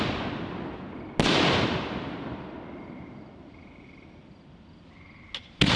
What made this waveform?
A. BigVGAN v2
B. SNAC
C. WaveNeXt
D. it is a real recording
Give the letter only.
D